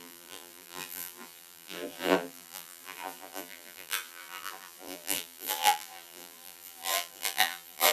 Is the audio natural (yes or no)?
no